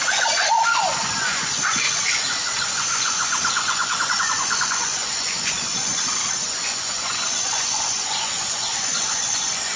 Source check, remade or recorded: remade